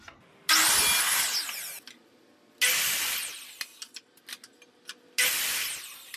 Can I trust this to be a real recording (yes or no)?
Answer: yes